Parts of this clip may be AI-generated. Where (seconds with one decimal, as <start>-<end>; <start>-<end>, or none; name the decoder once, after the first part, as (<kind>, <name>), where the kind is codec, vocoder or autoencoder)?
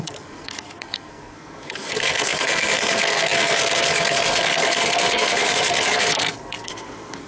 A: 0.0-7.3 (codec, SNAC)